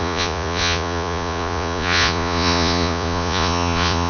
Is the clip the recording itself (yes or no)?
no